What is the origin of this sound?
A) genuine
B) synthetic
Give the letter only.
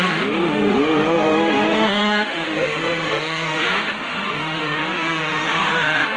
B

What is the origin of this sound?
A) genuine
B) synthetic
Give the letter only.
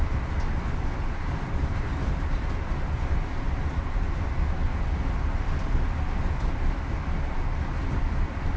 A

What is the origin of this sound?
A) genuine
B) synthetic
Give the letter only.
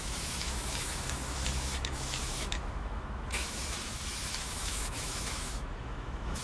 B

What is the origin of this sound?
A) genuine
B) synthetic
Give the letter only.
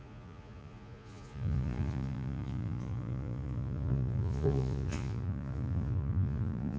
B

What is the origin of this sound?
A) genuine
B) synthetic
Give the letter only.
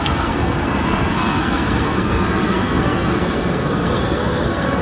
B